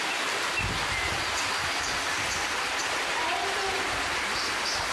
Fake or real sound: real